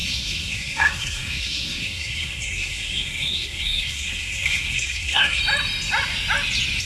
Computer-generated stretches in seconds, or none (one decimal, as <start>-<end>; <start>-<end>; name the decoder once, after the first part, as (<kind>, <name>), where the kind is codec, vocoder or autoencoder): 0.0-5.4 (codec, SNAC)

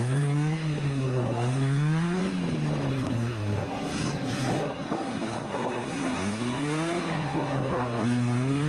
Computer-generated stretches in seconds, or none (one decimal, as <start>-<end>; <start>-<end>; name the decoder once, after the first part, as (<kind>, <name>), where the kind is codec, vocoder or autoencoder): 0.0-2.2 (codec, SNAC); 2.9-8.7

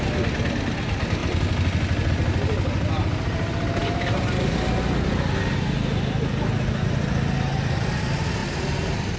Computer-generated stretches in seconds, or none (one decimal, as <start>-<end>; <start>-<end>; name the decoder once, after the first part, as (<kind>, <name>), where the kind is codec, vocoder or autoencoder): none

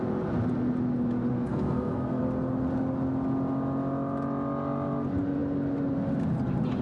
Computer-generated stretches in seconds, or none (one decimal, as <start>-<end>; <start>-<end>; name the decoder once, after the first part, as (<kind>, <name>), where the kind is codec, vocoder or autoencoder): 1.3-2.2 (codec, SNAC)

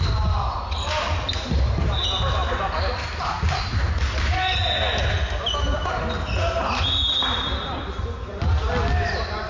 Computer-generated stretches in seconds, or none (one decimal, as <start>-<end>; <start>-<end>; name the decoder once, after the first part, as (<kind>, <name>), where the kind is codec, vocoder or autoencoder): none